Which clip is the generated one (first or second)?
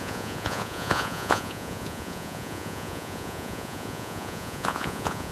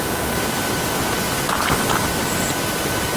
first